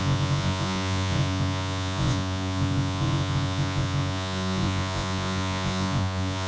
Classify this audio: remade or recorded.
remade